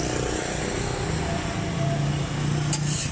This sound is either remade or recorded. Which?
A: recorded